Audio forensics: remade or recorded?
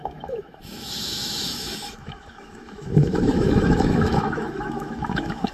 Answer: remade